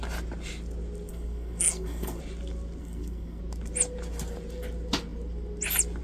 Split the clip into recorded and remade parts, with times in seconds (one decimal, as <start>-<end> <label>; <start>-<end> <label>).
0.0-1.1 recorded; 1.1-2.2 remade; 2.2-2.8 recorded; 2.8-3.4 remade; 3.4-6.0 recorded